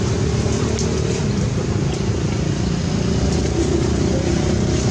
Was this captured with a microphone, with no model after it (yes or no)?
yes